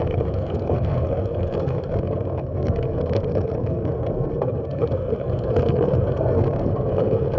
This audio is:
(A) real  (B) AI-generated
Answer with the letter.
B